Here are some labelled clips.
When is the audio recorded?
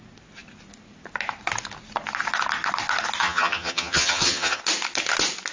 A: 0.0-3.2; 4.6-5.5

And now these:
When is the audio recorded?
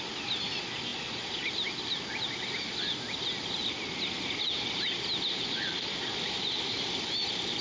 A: 0.0-7.6